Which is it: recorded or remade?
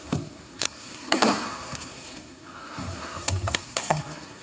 remade